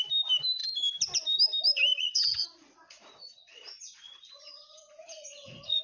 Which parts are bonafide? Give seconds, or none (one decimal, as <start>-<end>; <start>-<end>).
0.0-1.9